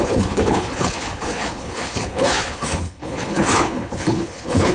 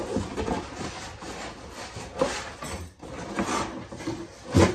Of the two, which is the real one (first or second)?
second